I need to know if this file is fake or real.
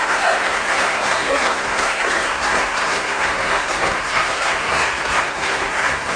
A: fake